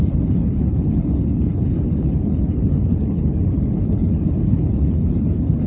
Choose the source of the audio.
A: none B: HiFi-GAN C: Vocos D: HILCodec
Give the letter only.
D